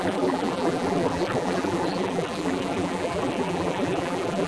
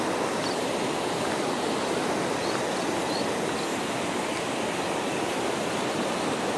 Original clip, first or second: second